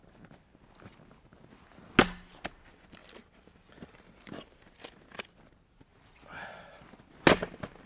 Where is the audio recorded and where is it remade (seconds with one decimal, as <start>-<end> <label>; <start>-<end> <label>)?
0.0-7.9 recorded